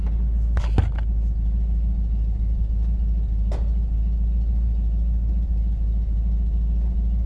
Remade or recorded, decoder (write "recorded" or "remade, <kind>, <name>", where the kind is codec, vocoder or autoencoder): recorded